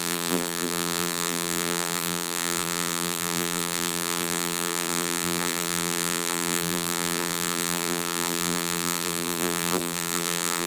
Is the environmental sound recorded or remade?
remade